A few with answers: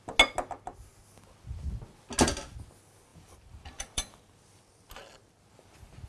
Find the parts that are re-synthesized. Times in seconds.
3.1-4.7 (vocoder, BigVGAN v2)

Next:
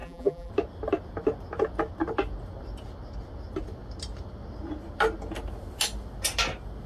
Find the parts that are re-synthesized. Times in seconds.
0.0-0.5 (vocoder, BigVGAN v2)

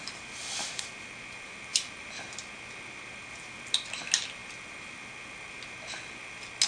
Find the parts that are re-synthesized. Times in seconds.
1.7-2.5 (vocoder, BigVGAN v2)

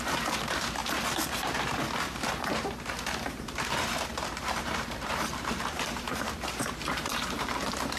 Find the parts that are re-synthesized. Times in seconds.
0.0-8.0 (vocoder, BigVGAN v2)

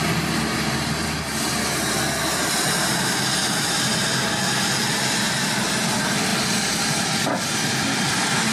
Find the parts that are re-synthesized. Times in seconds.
0.0-8.5 (vocoder, BigVGAN v2)